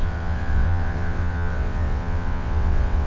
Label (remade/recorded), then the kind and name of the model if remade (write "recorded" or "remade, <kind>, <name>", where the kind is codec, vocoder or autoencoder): remade, vocoder, WaveNeXt